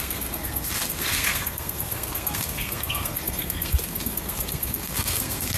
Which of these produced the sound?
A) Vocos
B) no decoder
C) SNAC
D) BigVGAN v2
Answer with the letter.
C